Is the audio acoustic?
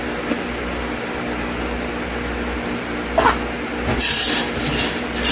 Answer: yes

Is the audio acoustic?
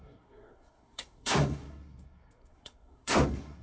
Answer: no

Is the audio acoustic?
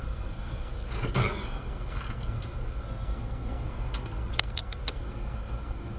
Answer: no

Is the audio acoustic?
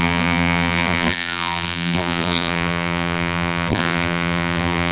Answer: no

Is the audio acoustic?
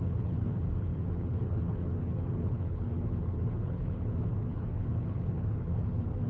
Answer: no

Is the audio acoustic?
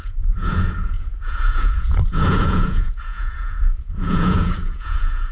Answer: no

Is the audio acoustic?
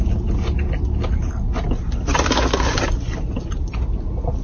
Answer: yes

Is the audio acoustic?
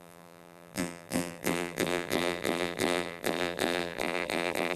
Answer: no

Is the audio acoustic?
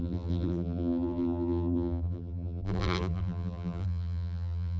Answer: no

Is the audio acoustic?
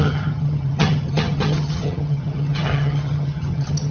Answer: no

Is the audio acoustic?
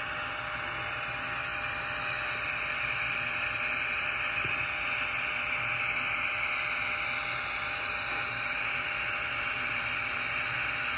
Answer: yes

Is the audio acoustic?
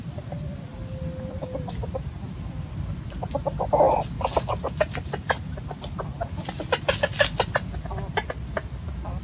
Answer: yes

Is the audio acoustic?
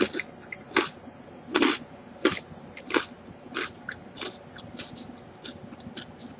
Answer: yes